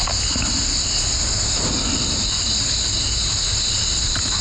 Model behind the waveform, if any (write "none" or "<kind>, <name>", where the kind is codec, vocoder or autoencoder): none